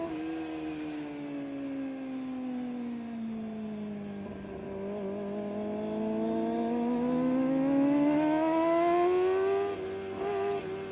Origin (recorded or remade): recorded